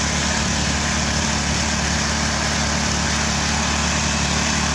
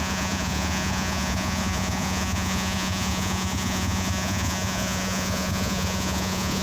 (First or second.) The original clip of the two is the first